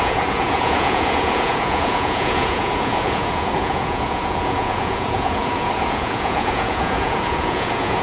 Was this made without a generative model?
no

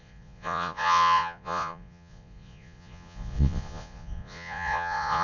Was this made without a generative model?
no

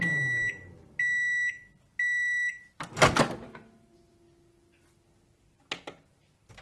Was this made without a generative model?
yes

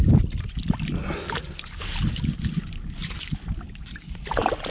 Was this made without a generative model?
yes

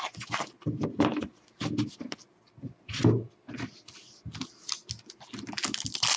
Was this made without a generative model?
yes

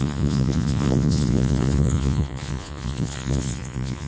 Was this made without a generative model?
no